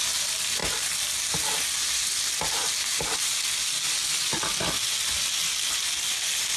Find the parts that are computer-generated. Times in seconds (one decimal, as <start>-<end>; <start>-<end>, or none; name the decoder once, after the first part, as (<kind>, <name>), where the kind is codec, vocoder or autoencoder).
none